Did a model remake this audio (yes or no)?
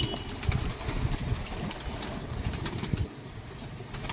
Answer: no